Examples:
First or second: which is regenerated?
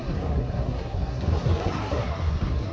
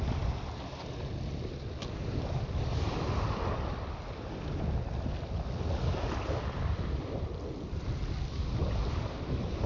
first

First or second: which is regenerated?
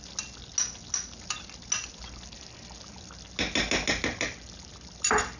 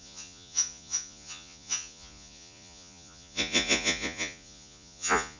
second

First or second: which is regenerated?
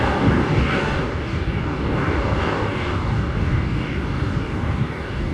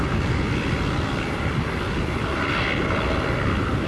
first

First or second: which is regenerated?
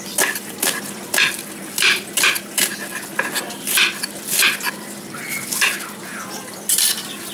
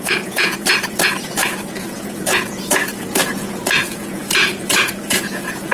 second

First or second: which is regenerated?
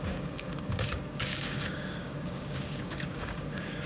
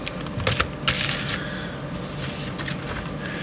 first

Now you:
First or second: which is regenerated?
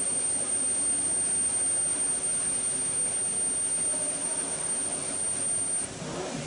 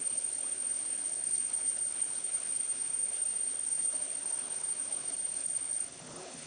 second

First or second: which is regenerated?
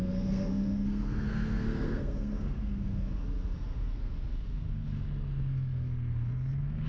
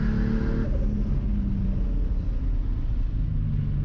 first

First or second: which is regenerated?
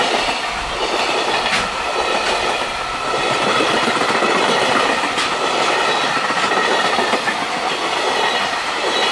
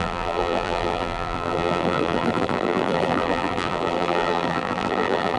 second